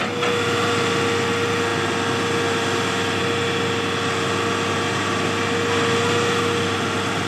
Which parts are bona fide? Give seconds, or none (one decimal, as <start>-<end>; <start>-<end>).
0.0-7.3